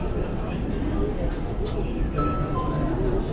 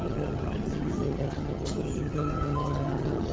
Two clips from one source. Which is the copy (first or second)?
second